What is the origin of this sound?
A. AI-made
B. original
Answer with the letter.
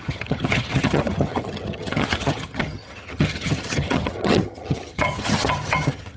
A